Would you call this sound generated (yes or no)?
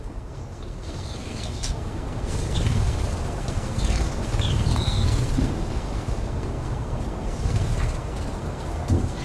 yes